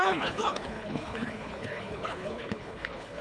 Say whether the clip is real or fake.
fake